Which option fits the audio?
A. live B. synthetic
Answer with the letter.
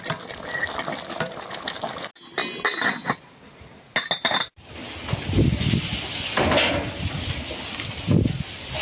A